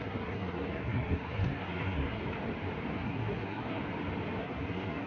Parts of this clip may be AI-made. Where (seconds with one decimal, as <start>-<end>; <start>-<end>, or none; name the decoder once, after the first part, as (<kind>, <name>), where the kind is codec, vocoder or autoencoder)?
0.0-2.2 (codec, SNAC); 2.9-3.8; 4.4-5.1